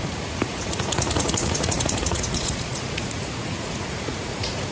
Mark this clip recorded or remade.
remade